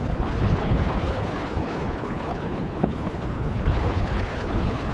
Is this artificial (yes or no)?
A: yes